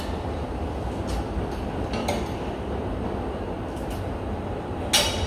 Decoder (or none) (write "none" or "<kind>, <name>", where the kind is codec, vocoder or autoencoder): none